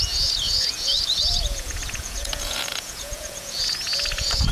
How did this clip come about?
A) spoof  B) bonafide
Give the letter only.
A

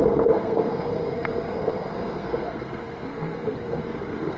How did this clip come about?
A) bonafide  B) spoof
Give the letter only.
B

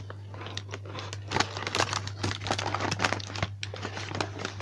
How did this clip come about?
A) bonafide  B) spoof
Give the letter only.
A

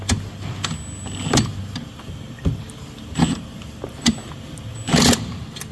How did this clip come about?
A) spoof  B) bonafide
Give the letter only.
B